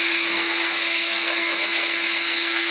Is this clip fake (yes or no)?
yes